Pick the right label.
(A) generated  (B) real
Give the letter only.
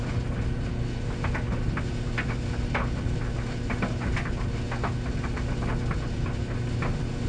B